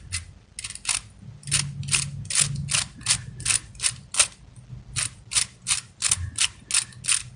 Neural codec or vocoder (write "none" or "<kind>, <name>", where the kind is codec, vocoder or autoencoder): none